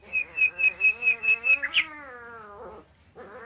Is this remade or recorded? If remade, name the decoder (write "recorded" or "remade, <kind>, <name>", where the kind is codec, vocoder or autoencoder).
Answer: recorded